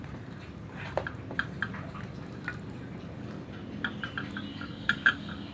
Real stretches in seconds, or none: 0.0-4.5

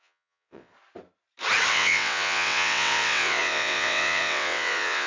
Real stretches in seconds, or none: 0.7-1.7

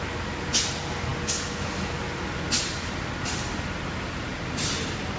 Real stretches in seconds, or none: 0.0-5.2

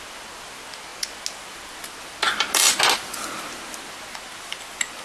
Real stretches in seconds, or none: 0.0-5.0

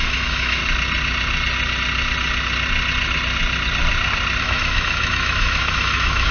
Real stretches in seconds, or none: 0.6-4.4